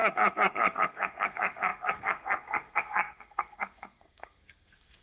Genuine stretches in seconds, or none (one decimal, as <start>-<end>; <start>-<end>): none